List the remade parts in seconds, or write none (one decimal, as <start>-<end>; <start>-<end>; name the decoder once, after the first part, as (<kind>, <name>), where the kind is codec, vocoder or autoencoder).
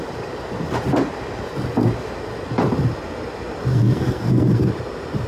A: 3.7-4.7 (codec, SNAC)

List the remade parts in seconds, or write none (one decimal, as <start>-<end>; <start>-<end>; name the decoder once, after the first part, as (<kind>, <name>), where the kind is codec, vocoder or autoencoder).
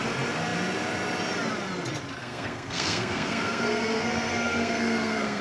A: 2.2-5.4 (codec, SNAC)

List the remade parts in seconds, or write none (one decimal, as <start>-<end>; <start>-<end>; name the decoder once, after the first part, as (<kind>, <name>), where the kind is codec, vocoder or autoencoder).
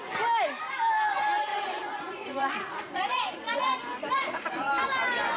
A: 1.5-4.7 (vocoder, Vocos)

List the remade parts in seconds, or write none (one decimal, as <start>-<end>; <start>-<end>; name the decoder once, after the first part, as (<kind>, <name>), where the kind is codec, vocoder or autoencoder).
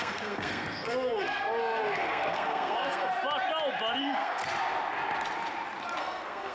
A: 0.0-3.1 (codec, SNAC); 4.0-4.4; 6.0-6.5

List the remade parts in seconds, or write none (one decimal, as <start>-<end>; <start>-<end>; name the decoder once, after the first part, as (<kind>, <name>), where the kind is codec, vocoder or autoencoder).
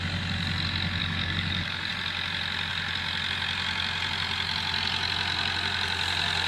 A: 1.0-1.9 (codec, DAC)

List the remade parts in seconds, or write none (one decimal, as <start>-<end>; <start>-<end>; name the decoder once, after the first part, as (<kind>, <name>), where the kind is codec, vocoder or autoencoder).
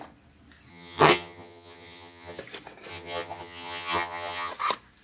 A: 0.7-2.4 (vocoder, HiFi-GAN); 2.9-4.5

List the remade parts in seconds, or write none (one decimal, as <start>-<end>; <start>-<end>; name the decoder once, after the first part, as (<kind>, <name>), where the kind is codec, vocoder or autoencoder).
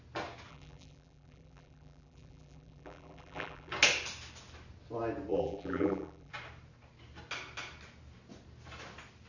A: 0.5-3.7 (vocoder, BigVGAN v2); 5.3-6.3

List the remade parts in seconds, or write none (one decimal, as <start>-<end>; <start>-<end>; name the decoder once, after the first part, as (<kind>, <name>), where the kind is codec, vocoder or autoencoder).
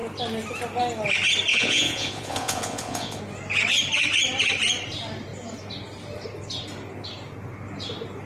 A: 1.5-3.2 (vocoder, Vocos)